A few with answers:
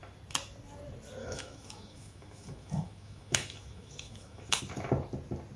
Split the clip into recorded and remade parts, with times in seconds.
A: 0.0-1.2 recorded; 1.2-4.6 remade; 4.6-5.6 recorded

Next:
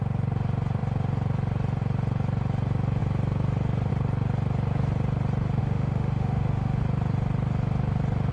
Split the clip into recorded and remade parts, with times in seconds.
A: 0.0-5.6 recorded; 5.6-6.8 remade; 6.8-8.3 recorded

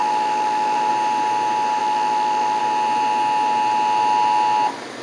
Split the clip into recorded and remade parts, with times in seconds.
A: 0.0-0.9 remade; 0.9-1.8 recorded; 1.8-2.6 remade; 2.6-5.0 recorded